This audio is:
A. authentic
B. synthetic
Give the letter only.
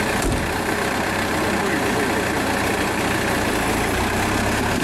A